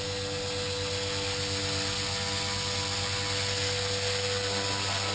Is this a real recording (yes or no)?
yes